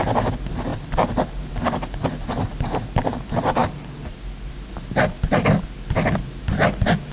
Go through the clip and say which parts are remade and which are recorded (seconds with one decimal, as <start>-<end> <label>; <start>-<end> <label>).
0.0-7.1 recorded